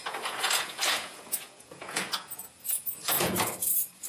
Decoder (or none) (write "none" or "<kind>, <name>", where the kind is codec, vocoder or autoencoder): vocoder, Vocos